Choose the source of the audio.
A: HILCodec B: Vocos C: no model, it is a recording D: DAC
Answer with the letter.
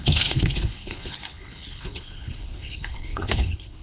A